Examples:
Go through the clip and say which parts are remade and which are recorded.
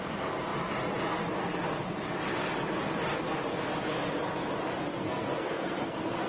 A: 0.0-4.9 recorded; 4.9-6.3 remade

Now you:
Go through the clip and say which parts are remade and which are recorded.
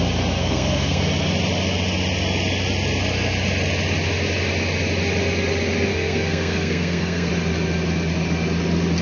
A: 0.0-0.4 recorded; 0.4-1.0 remade; 1.0-5.9 recorded; 5.9-7.3 remade; 7.3-9.0 recorded